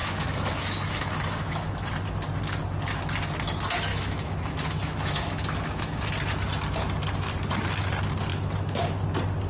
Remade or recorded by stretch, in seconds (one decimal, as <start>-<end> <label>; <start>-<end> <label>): 0.0-1.9 remade; 1.9-3.9 recorded; 3.9-6.0 remade; 6.0-8.3 recorded; 8.3-9.0 remade; 9.0-9.5 recorded